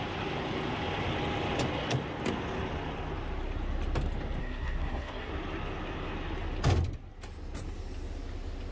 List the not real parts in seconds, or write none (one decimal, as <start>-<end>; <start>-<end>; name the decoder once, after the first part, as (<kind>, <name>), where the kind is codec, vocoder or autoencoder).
4.4-5.3 (codec, SNAC)